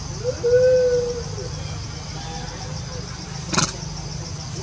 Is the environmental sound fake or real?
real